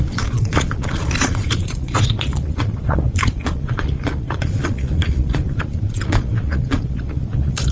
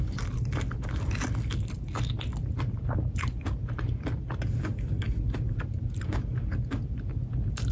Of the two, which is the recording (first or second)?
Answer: second